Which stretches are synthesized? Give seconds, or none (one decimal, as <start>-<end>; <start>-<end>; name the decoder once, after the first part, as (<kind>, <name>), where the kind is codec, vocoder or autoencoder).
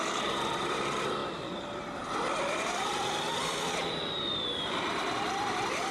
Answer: 0.0-5.9 (vocoder, BigVGAN v2)